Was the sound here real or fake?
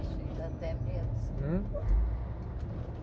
real